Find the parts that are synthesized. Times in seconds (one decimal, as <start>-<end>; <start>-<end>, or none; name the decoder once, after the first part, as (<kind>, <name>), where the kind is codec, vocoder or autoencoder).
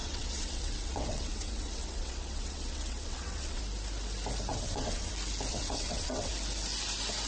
0.0-3.6 (vocoder, WaveNeXt); 4.5-5.1; 5.5-6.3